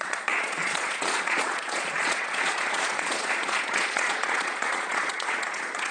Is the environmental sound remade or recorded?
remade